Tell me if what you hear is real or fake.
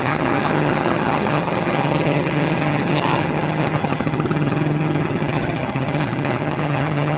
fake